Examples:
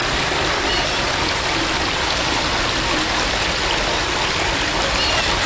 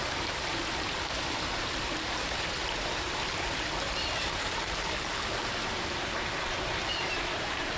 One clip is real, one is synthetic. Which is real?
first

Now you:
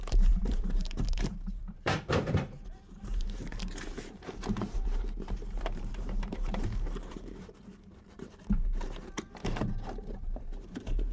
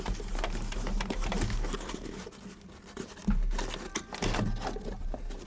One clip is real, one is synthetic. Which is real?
second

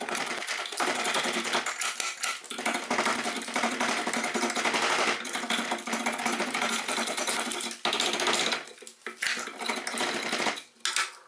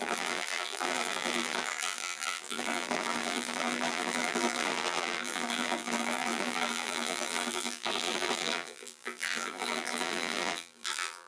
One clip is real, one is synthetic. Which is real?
first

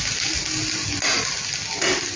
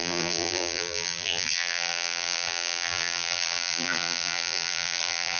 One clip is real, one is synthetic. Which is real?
first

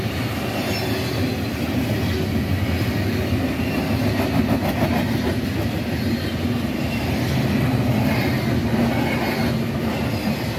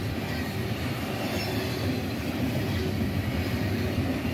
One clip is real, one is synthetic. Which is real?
first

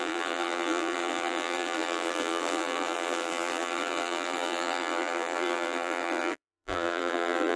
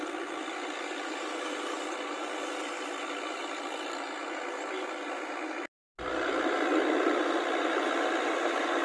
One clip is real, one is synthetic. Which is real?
second